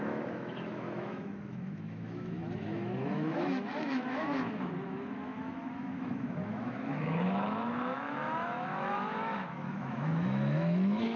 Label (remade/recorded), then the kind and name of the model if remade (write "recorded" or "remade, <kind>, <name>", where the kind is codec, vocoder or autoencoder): remade, autoencoder, DAC-VAE